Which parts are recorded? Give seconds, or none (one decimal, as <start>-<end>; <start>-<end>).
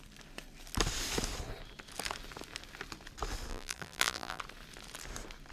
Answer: 0.0-3.5; 4.4-5.5